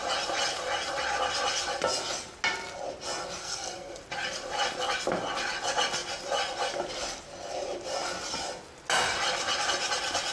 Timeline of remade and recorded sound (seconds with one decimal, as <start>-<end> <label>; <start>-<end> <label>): 0.0-3.4 recorded; 3.4-4.0 remade; 4.0-10.3 recorded